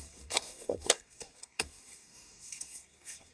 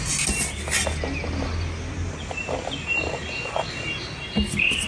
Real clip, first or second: second